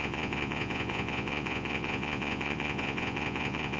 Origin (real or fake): fake